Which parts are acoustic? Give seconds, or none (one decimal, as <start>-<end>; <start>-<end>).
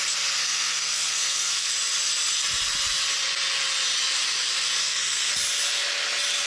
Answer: 0.0-0.4; 1.7-4.8; 5.3-6.5